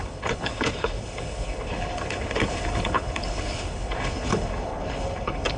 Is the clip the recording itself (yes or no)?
no